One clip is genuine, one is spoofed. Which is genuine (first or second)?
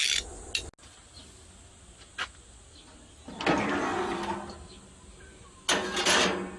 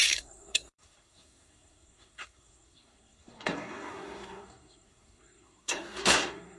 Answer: first